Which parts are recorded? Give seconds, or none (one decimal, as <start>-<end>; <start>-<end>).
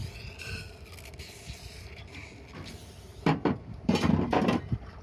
0.0-3.1